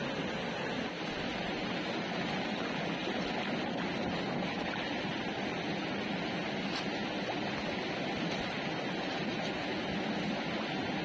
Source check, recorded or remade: recorded